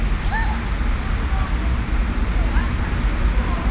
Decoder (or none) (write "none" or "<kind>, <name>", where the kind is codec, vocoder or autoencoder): none